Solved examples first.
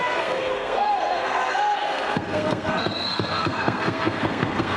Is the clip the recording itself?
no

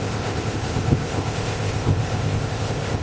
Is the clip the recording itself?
no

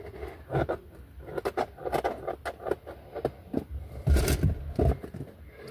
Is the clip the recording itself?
yes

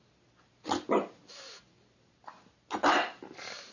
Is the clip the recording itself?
yes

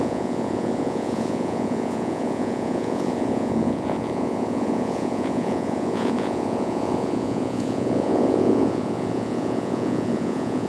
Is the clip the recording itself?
no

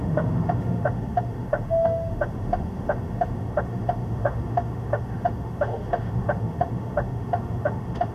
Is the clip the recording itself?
no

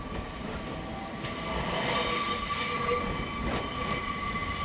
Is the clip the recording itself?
yes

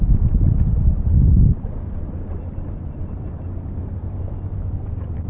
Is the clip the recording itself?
yes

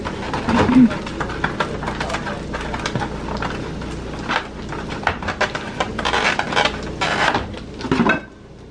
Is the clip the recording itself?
yes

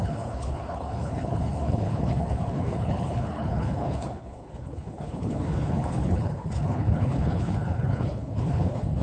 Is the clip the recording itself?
no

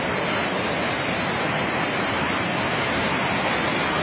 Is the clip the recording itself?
yes